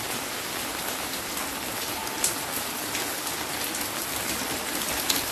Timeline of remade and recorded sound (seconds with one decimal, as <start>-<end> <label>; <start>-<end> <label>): 0.0-0.7 recorded; 0.7-1.2 remade; 1.2-5.3 recorded